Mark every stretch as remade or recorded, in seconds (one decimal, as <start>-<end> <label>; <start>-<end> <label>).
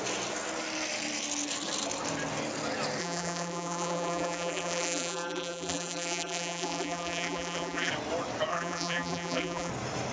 0.0-3.0 recorded; 3.0-7.9 remade; 7.9-8.5 recorded; 8.5-9.7 remade; 9.7-10.1 recorded